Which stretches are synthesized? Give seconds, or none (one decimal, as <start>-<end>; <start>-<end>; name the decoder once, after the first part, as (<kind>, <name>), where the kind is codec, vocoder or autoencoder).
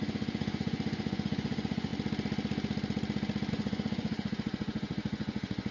0.0-1.9 (vocoder, Vocos); 3.5-5.7